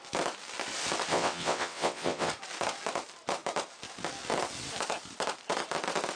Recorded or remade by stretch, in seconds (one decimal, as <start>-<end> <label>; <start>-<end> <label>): 0.0-1.1 recorded; 1.1-2.3 remade; 2.3-6.2 recorded